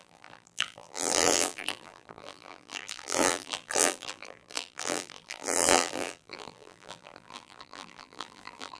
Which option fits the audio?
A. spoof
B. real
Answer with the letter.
A